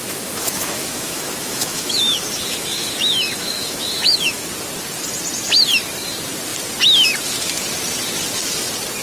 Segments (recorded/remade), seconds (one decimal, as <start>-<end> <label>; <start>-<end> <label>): 0.0-4.5 remade; 4.5-9.0 recorded